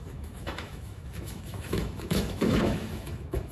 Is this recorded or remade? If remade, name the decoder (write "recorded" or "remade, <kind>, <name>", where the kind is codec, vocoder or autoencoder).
remade, autoencoder, DAC-VAE